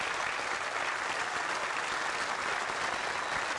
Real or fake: real